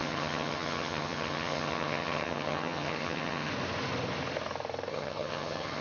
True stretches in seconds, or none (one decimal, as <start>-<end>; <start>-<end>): 3.5-4.9